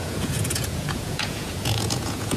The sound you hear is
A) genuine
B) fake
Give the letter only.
B